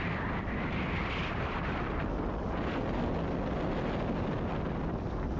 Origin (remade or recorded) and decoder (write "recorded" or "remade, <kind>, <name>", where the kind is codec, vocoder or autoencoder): recorded